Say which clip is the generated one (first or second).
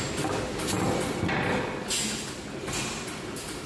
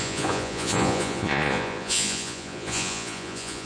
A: second